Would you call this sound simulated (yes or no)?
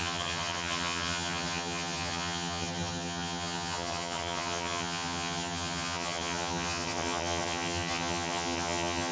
yes